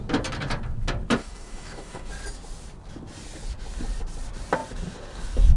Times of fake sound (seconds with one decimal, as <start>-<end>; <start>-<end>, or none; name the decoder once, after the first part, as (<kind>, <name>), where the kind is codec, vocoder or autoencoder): 1.2-2.1 (codec, DAC)